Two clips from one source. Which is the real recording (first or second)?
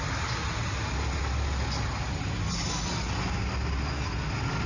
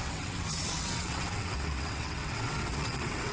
first